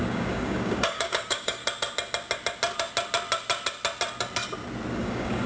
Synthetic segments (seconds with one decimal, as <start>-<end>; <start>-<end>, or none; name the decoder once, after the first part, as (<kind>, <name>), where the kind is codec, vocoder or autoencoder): 0.0-1.6 (codec, DAC); 4.9-5.5